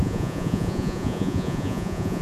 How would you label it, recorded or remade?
remade